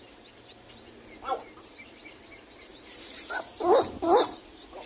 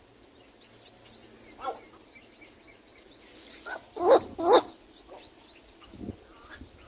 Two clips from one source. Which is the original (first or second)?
second